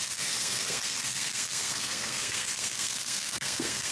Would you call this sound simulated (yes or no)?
yes